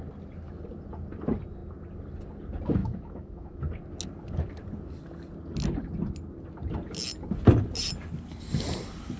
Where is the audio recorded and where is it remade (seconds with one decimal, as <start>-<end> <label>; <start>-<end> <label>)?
0.0-2.8 recorded; 2.8-3.6 remade; 3.6-9.2 recorded